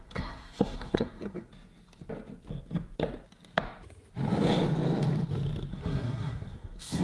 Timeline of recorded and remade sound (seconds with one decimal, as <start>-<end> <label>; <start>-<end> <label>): 0.0-1.5 remade; 1.5-5.7 recorded; 5.7-7.0 remade